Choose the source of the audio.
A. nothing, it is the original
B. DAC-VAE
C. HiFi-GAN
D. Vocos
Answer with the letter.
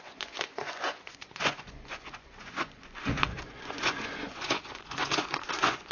D